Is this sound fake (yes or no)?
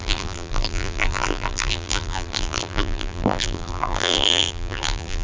yes